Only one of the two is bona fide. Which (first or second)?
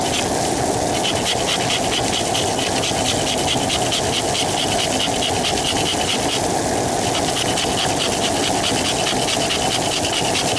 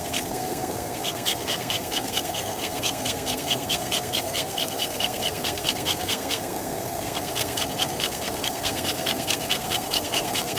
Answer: first